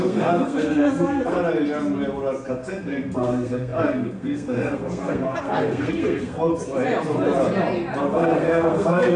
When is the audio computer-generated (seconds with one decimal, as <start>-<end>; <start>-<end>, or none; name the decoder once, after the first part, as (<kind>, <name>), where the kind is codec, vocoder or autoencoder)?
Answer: 0.0-1.4 (codec, SNAC); 2.5-6.5; 8.0-9.2